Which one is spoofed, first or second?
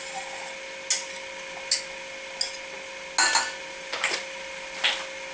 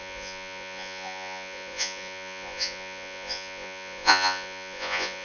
second